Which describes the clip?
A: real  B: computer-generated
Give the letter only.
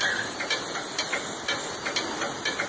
A